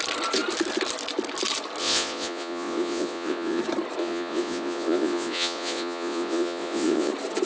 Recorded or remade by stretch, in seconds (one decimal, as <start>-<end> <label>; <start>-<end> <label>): 0.0-1.8 recorded; 1.8-3.6 remade; 3.6-4.0 recorded; 4.0-7.1 remade; 7.1-7.5 recorded